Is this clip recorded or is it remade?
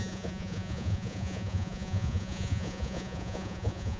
remade